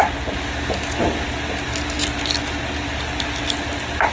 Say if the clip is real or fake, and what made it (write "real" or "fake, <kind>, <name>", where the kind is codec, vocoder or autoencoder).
real